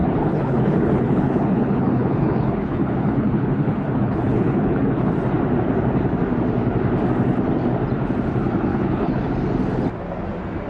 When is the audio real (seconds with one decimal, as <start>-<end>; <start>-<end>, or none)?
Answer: 5.1-8.7; 9.2-10.7